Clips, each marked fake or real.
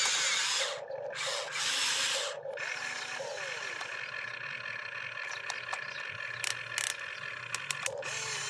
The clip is real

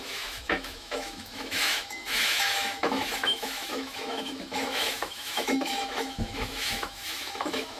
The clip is fake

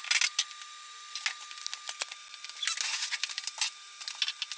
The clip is real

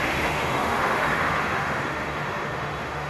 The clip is fake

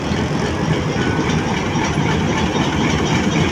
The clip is real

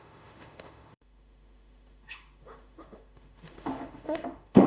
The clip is fake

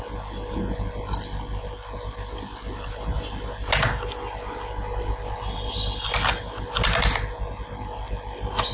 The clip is real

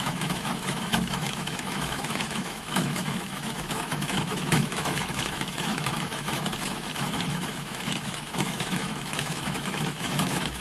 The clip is fake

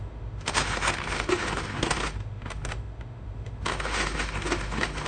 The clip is fake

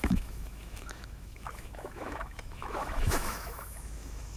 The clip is fake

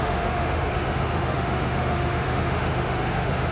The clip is fake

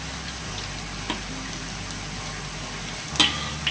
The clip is real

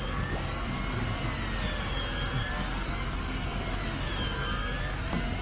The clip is real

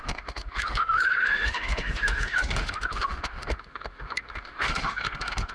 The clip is fake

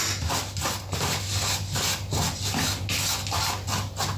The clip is real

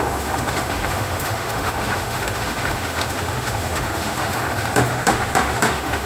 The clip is fake